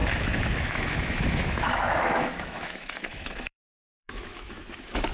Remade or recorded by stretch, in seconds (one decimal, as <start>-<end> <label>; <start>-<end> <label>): 0.0-5.1 remade

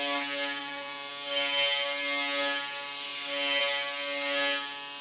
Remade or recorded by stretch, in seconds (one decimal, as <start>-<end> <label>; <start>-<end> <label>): 0.0-0.6 recorded; 0.6-1.1 remade; 1.1-5.0 recorded

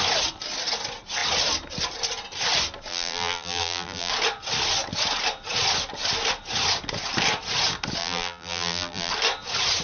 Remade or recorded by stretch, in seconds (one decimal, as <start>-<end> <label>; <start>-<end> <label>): 0.0-2.9 recorded; 2.9-4.1 remade; 4.1-8.0 recorded; 8.0-9.1 remade; 9.1-9.8 recorded